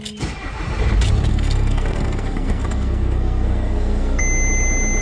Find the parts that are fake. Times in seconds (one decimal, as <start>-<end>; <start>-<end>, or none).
1.3-4.2